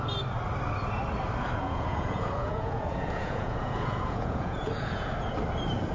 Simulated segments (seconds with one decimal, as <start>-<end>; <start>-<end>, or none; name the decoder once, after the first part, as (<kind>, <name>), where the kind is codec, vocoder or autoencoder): 1.6-5.1 (vocoder, Vocos)